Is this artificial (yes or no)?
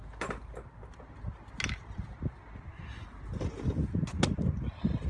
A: no